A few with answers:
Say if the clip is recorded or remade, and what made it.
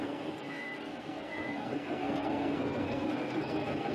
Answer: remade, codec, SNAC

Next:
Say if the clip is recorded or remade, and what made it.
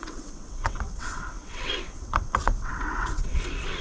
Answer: remade, vocoder, WaveNeXt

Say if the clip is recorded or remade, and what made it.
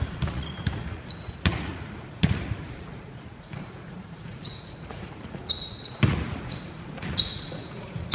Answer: remade, vocoder, Vocos